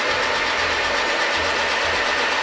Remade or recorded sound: recorded